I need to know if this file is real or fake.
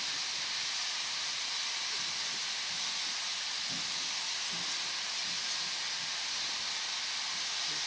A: real